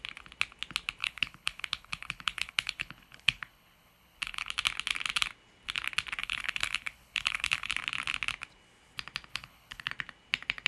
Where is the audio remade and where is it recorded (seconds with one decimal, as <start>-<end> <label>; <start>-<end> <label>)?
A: 0.0-1.0 recorded; 1.0-4.5 remade; 4.5-6.2 recorded; 6.2-7.7 remade; 7.7-9.3 recorded; 9.3-9.9 remade; 9.9-10.7 recorded